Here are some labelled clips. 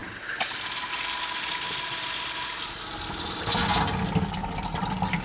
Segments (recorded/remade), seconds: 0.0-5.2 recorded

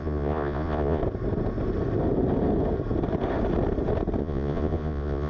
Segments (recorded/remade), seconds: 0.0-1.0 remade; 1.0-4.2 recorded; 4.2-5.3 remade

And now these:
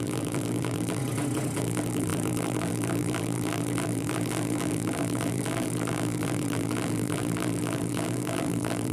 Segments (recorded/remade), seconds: 0.0-1.0 remade; 1.0-1.6 recorded; 1.6-8.9 remade

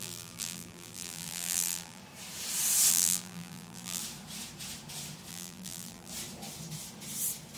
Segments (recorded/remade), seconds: 0.0-2.0 remade; 2.0-2.9 recorded; 2.9-4.0 remade; 4.0-5.3 recorded; 5.3-6.1 remade; 6.1-7.6 recorded

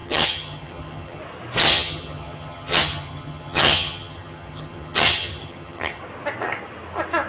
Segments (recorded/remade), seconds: 0.0-1.2 remade; 1.2-1.6 recorded; 1.6-6.0 remade; 6.0-7.3 recorded